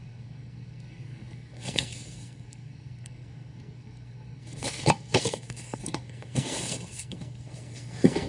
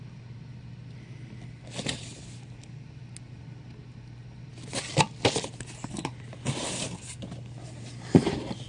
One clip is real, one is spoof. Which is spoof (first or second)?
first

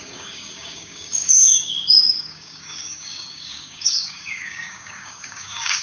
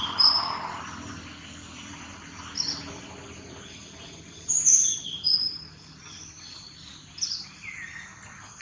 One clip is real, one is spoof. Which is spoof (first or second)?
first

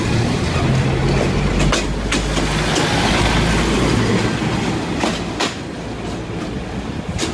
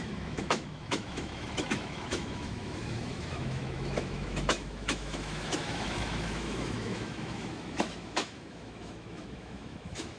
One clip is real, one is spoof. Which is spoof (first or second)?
second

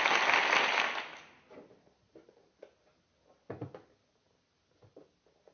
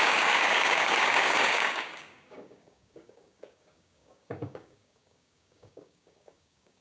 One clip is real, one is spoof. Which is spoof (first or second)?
second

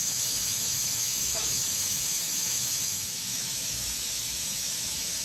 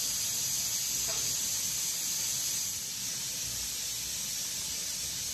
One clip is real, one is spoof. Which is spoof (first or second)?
first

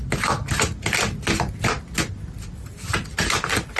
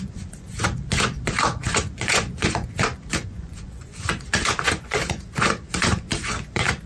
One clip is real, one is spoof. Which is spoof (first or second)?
second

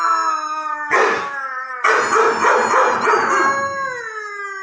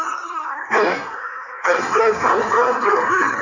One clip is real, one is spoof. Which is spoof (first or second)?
second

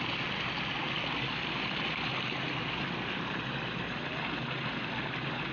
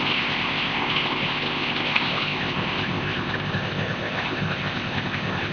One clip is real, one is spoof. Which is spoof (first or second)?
second